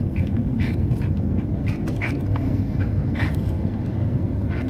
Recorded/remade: remade